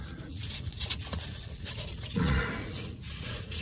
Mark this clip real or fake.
fake